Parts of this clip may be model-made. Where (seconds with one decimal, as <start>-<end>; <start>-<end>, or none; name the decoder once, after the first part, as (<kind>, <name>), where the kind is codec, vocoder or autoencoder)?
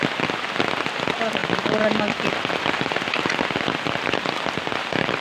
none